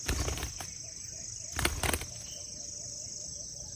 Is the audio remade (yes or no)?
no